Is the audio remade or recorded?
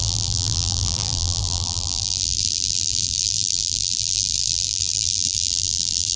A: remade